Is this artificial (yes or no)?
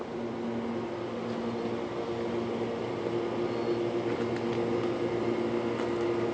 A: no